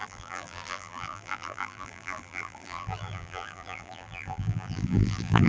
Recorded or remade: remade